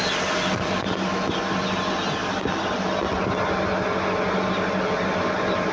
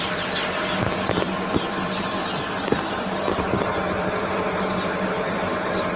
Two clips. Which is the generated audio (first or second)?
second